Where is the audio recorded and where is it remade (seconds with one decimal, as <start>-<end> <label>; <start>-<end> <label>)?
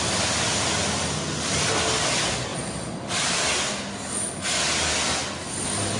0.0-6.0 recorded